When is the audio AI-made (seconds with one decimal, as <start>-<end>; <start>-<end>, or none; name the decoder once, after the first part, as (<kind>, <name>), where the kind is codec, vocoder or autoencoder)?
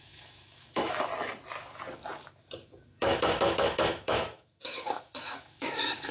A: 0.0-1.1 (autoencoder, DAC-VAE); 2.3-6.1